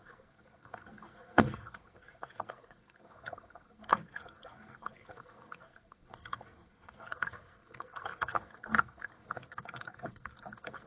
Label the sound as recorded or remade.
remade